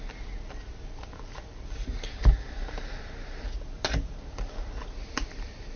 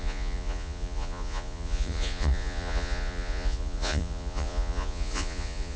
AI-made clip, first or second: second